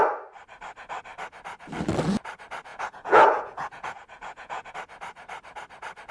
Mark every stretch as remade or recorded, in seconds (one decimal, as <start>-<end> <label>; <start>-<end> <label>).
0.0-2.7 recorded; 2.7-4.7 remade; 4.7-6.1 recorded